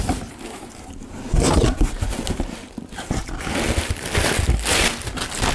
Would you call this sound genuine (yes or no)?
yes